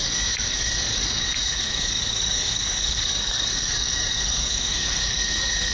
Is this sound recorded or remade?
remade